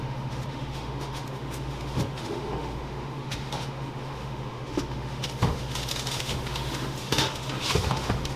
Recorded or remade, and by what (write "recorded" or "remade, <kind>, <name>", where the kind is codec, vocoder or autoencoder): remade, autoencoder, DAC-VAE